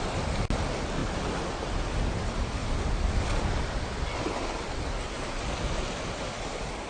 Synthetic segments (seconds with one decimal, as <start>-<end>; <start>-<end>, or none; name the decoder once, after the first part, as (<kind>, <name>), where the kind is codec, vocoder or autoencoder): none